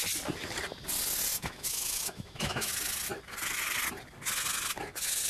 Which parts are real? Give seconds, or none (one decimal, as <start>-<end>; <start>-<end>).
0.0-1.3; 2.7-5.3